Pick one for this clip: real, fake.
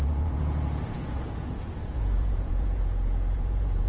fake